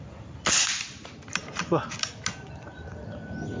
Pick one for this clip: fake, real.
real